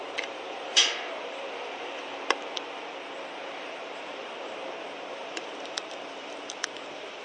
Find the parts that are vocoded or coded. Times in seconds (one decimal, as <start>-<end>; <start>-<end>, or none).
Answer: 0.0-7.2